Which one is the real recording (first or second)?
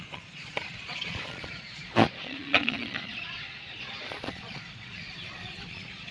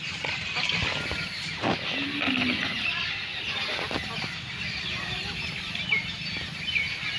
second